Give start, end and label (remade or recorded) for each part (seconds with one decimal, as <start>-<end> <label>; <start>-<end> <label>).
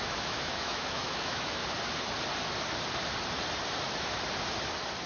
0.0-1.6 remade; 1.6-5.1 recorded